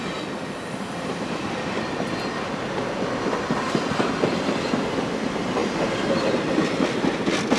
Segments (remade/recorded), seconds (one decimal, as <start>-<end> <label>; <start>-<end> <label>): 0.0-7.6 recorded